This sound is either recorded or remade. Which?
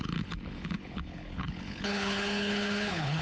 remade